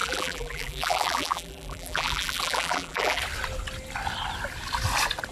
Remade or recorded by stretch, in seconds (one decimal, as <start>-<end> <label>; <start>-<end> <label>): 0.0-3.2 remade; 3.2-5.3 recorded